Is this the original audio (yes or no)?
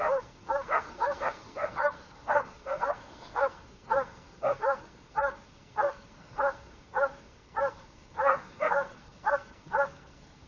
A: no